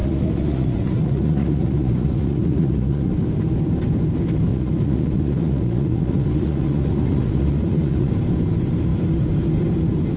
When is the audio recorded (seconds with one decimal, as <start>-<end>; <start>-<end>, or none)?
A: 3.1-4.5; 8.1-10.2